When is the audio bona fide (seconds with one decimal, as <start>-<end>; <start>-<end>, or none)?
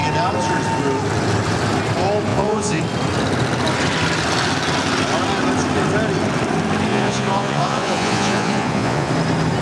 0.0-2.3; 2.8-6.9; 9.1-9.6